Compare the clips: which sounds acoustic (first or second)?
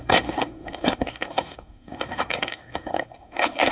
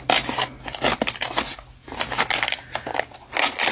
second